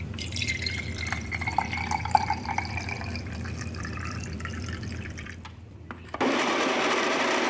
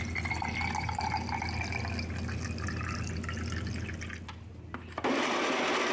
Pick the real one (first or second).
second